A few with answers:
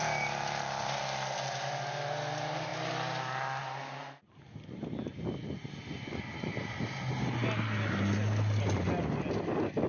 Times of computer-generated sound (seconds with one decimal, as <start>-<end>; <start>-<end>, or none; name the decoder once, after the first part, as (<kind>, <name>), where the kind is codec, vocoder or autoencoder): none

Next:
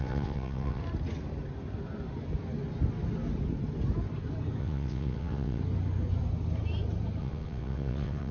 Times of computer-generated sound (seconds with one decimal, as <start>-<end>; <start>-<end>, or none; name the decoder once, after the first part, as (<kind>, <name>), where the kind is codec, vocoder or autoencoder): 0.0-0.8 (vocoder, WaveNeXt); 4.6-5.6; 7.2-8.3

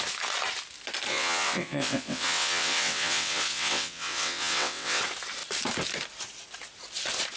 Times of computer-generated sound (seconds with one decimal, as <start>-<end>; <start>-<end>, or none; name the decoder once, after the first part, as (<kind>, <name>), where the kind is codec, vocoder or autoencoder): 1.1-5.0 (vocoder, WaveNeXt)

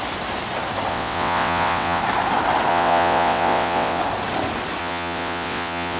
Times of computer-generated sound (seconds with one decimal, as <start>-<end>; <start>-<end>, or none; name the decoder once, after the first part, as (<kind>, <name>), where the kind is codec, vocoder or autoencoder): 0.9-2.0 (vocoder, WaveNeXt); 2.7-4.0; 4.8-6.0